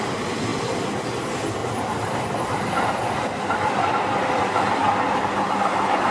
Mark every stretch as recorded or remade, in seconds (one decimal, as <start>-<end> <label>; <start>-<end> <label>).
0.0-1.6 recorded; 1.6-2.6 remade; 2.6-6.1 recorded